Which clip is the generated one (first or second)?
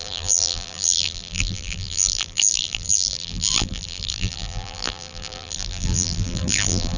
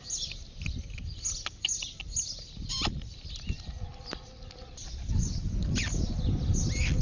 first